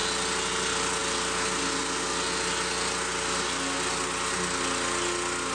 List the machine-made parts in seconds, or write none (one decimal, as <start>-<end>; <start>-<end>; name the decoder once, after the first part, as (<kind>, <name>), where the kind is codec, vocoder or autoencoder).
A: none